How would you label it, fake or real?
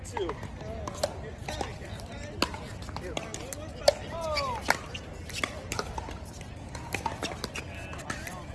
real